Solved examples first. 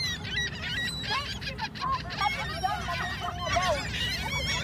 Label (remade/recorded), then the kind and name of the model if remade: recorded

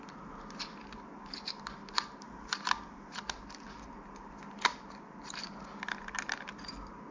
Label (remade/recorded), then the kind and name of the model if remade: recorded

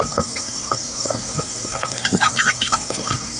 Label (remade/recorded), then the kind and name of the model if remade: remade, codec, SNAC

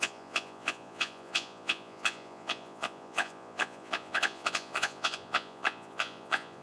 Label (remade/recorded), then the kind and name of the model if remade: remade, vocoder, Vocos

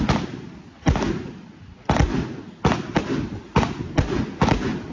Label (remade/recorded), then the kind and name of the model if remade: recorded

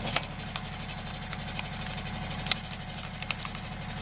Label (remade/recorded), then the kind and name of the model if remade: recorded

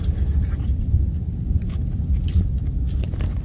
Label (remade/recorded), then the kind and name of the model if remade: recorded